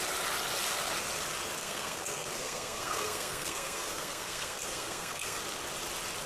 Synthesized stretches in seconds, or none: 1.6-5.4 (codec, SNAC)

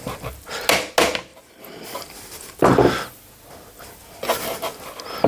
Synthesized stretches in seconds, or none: none